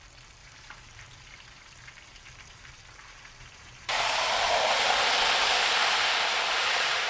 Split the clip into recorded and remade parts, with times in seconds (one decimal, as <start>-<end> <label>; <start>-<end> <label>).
0.0-0.4 recorded; 0.4-4.7 remade; 4.7-7.1 recorded